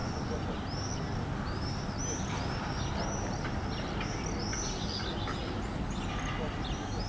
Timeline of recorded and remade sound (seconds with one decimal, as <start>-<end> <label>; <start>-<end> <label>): 0.0-0.5 remade; 0.5-7.1 recorded